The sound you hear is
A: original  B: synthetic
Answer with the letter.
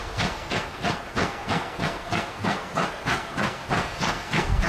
B